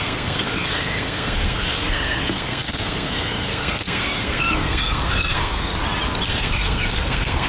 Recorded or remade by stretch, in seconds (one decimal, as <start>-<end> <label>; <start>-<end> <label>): 0.0-5.7 remade; 5.7-6.3 recorded; 6.3-7.5 remade